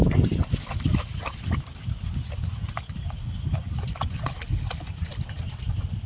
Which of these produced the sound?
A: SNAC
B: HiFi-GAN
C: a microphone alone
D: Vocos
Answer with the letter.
C